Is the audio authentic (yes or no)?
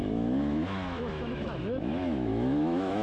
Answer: no